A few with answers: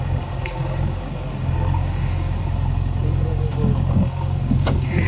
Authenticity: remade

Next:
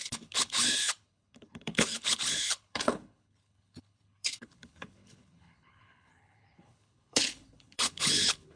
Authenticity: remade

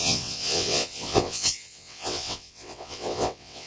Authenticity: remade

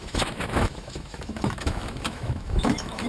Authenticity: remade